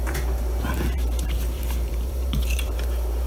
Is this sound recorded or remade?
remade